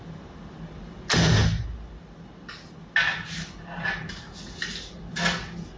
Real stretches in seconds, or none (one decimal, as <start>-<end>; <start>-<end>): 0.0-5.8